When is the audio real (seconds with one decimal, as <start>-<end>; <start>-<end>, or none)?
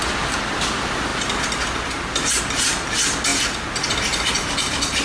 0.0-5.0